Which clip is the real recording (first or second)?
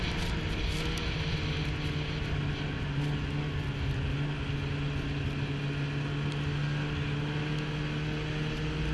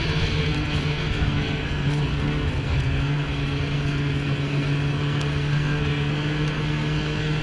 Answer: first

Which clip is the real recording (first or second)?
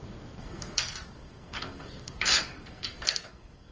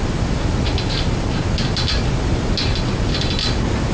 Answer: second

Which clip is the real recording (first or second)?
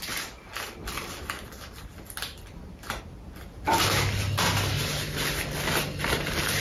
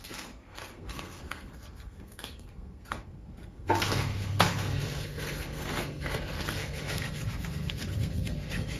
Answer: first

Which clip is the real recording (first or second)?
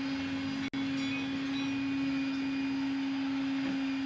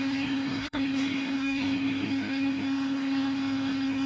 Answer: first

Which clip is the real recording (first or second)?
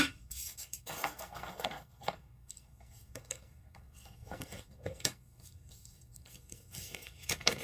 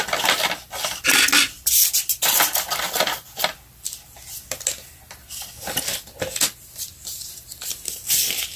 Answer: second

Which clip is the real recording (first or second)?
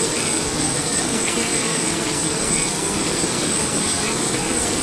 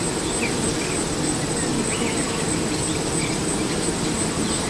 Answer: second